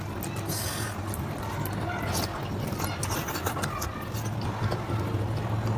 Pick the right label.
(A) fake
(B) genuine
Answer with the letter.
B